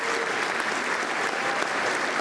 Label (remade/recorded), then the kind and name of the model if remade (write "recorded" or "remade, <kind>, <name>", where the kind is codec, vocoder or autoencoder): recorded